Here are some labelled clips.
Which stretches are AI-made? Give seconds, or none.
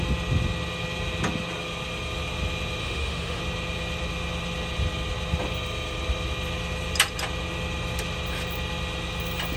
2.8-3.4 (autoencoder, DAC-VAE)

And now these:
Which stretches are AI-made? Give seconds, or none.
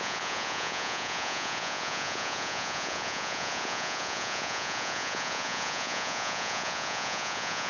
0.0-7.7 (vocoder, Vocos)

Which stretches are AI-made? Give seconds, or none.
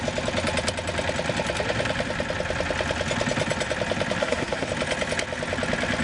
4.2-4.7 (codec, SNAC)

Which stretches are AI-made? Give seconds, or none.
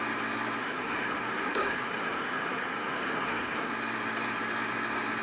0.6-3.7 (codec, SNAC)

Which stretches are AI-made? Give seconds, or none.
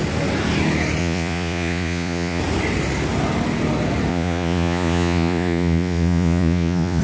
1.0-2.4 (vocoder, Vocos); 4.1-7.0